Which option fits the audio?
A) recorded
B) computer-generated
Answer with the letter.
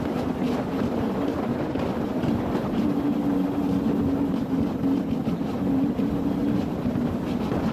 A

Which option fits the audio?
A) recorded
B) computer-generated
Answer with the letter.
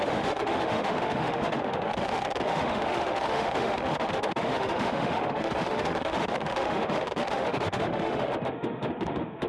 B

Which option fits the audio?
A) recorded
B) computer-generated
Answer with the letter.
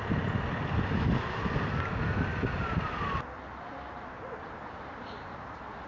A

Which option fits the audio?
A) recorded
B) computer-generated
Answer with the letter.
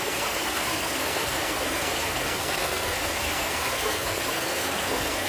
B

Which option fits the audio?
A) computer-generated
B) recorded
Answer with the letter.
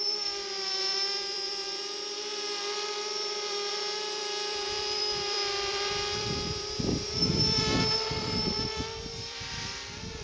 A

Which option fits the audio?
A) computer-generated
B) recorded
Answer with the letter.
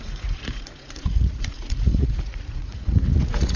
A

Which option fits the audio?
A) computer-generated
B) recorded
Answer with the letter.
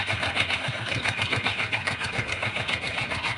A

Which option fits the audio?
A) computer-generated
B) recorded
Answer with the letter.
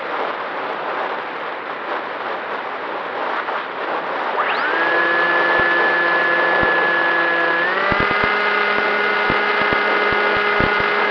B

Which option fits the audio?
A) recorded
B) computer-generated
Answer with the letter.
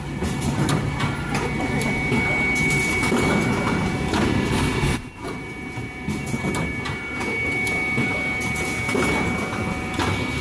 A